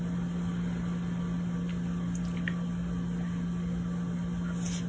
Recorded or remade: recorded